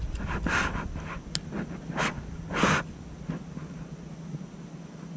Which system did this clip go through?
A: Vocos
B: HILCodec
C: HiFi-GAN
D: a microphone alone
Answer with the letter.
D